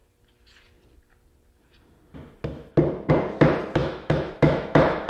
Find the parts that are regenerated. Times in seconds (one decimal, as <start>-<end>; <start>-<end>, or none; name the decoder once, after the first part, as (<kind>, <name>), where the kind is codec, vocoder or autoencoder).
3.8-5.1 (autoencoder, DAC-VAE)

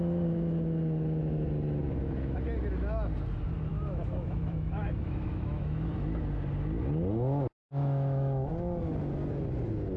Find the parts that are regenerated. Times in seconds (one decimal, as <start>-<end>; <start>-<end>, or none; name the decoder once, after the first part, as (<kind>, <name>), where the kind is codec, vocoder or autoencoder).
3.7-5.9 (autoencoder, DAC-VAE); 7.6-8.5